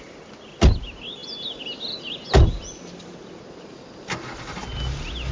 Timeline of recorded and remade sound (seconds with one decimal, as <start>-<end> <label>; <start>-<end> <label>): 0.0-5.3 recorded